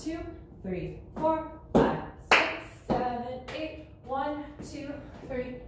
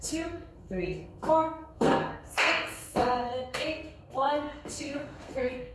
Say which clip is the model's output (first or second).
second